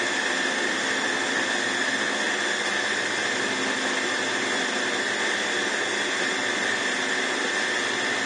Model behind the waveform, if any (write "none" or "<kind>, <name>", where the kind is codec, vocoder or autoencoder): none